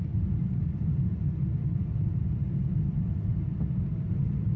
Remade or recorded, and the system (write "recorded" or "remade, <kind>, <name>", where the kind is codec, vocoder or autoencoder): recorded